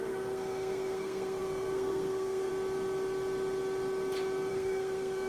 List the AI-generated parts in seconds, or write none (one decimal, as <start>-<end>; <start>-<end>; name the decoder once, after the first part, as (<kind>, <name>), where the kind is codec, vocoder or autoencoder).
0.0-2.5 (codec, SNAC); 4.5-5.3